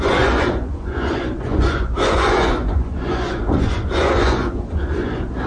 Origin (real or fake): fake